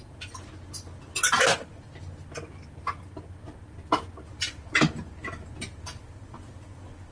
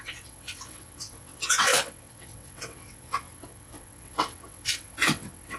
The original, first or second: first